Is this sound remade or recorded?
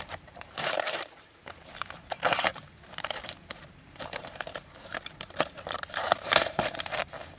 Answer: remade